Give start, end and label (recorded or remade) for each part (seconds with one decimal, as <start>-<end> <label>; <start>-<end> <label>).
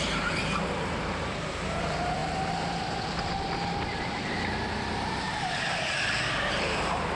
0.0-2.2 remade; 2.2-6.5 recorded; 6.5-7.1 remade